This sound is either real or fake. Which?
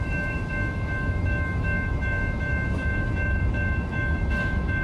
fake